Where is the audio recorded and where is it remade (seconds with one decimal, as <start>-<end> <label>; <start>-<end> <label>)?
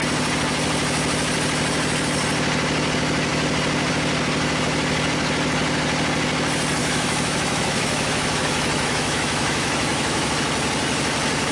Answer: 0.0-6.8 recorded; 6.8-10.3 remade; 10.3-11.5 recorded